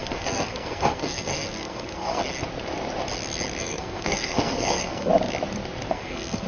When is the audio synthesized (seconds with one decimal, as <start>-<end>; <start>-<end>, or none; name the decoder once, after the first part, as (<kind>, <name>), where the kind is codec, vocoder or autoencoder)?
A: 0.0-2.2 (codec, SNAC); 3.6-5.1; 5.9-6.5